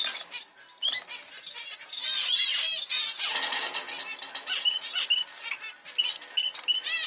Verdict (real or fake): real